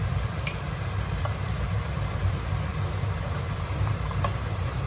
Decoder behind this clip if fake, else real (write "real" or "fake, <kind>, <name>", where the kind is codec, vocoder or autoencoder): fake, vocoder, BigVGAN v2